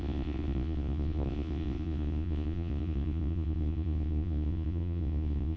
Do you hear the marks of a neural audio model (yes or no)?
yes